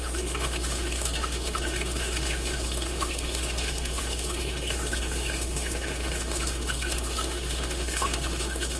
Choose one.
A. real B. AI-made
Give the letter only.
B